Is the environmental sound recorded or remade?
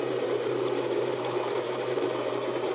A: recorded